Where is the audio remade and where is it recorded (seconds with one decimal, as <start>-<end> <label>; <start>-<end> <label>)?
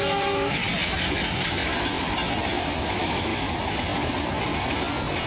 0.0-0.6 remade; 0.6-2.8 recorded; 2.8-3.3 remade; 3.3-5.3 recorded